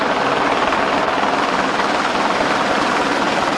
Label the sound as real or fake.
fake